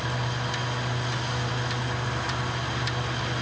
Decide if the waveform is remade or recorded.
recorded